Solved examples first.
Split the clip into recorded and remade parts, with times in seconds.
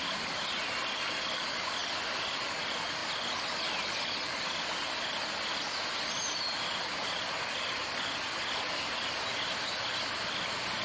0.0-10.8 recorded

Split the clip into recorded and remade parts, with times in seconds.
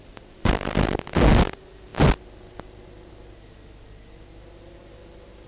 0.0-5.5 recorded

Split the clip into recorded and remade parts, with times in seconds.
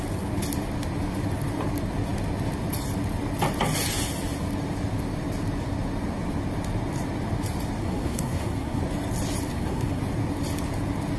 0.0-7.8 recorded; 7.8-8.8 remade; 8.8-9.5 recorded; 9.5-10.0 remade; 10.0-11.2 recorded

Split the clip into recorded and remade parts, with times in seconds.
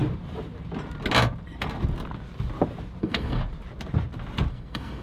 0.0-3.0 recorded; 3.0-3.4 remade; 3.4-4.5 recorded; 4.5-5.0 remade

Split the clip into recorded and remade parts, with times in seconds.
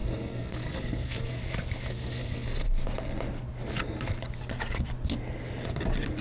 0.0-1.4 remade; 1.4-1.9 recorded; 1.9-2.6 remade; 2.6-6.2 recorded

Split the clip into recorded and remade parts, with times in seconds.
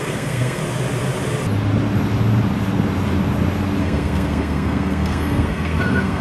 0.0-0.6 remade; 0.6-3.8 recorded; 3.8-6.2 remade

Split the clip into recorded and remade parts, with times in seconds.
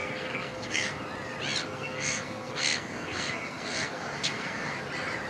0.0-1.0 remade; 1.0-1.6 recorded; 1.6-4.8 remade; 4.8-5.3 recorded